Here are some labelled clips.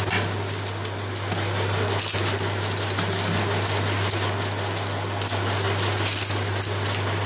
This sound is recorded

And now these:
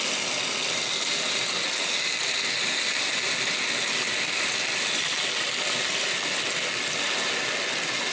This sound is recorded